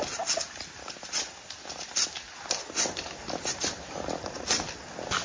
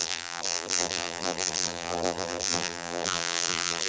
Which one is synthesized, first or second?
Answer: second